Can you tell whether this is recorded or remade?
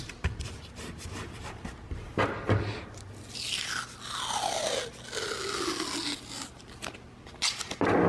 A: recorded